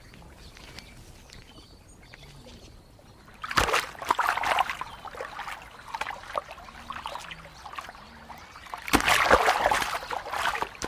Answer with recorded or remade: recorded